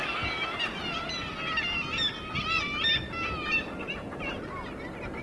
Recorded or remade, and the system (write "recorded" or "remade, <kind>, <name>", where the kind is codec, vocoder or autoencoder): recorded